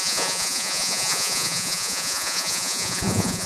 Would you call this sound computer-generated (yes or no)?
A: yes